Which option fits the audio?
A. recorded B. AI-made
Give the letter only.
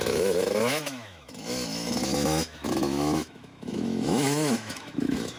B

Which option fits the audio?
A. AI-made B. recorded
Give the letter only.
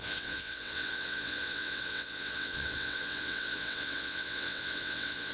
A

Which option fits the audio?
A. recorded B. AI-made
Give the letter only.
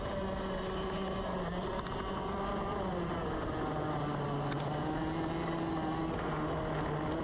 A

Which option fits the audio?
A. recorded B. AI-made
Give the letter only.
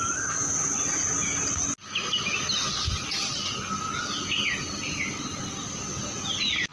A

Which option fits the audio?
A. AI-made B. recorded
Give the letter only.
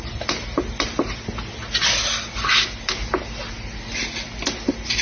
B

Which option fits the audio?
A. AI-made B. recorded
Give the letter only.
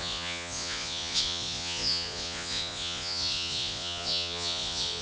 A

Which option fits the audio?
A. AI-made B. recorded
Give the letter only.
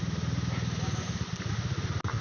B